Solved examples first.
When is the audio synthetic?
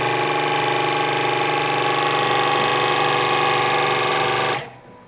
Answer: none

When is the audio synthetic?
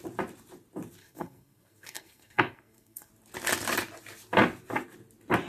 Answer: 1.0-3.1 (codec, SNAC)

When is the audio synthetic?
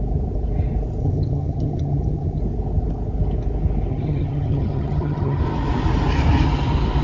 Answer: 1.0-2.4 (vocoder, HiFi-GAN); 3.9-5.4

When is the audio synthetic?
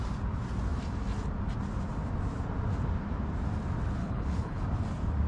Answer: 4.0-4.6 (codec, HILCodec)